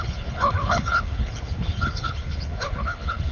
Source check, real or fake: fake